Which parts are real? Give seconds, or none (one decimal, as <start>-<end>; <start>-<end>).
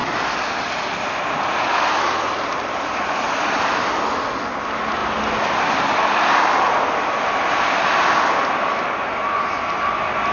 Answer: 0.0-10.3